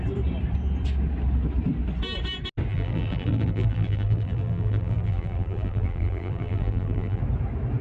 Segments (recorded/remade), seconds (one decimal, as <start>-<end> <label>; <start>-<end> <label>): 0.0-2.7 recorded; 2.7-7.2 remade; 7.2-7.8 recorded